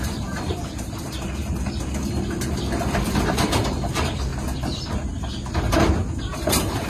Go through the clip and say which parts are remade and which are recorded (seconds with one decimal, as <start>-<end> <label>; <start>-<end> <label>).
0.0-4.3 remade; 4.3-5.6 recorded; 5.6-6.9 remade